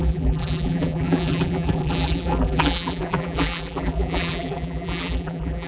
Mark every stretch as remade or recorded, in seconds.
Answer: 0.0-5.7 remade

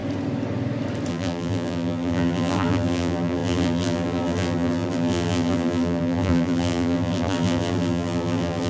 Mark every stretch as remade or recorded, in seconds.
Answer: 0.0-1.1 recorded; 1.1-8.7 remade